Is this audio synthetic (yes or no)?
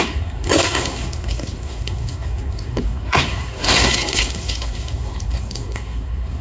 yes